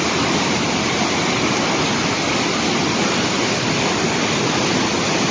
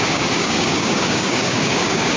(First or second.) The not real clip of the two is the second